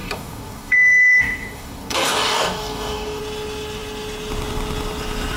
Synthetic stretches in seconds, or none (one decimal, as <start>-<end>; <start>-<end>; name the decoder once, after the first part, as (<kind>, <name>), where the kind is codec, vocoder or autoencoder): 0.0-3.2 (codec, DAC)